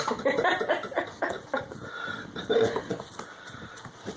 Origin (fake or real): fake